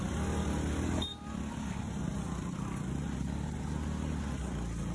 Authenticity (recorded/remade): recorded